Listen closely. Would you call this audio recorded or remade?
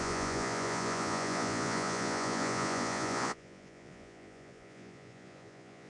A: remade